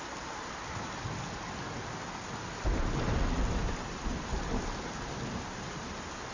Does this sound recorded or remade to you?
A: recorded